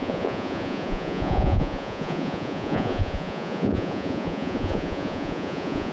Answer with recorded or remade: remade